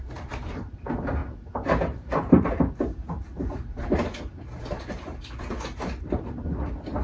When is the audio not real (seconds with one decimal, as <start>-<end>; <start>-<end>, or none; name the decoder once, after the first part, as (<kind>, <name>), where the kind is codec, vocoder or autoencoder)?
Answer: none